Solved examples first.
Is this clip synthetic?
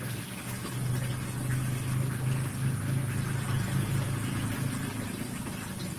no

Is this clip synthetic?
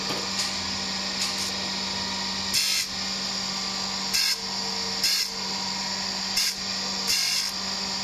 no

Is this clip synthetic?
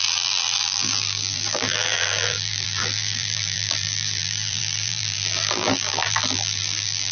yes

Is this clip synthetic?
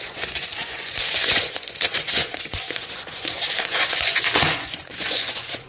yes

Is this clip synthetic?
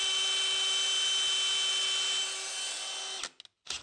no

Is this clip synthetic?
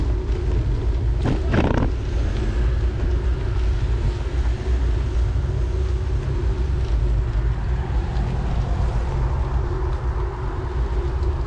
no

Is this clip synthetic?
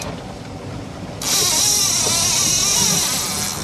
no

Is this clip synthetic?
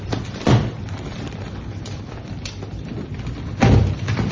no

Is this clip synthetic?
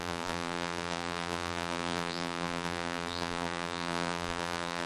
yes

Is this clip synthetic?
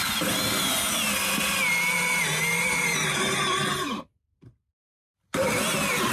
no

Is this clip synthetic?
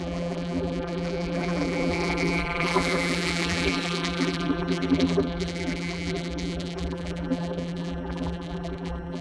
yes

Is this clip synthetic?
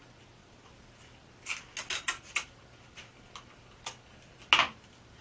no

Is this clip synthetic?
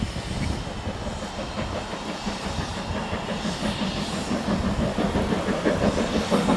no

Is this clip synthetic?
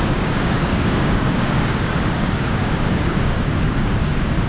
yes